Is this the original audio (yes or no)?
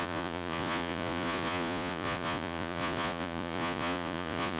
no